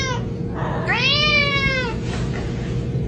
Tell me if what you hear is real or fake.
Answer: real